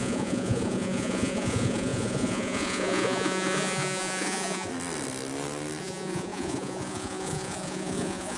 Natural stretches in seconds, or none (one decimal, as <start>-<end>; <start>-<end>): 4.7-5.8